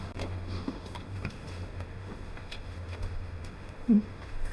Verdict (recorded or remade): remade